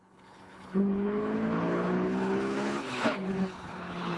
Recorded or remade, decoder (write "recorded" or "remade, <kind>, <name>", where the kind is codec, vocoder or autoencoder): remade, codec, HILCodec